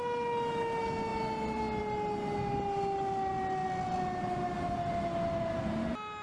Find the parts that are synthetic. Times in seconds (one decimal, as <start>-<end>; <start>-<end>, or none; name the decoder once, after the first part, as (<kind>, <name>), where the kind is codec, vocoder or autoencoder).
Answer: none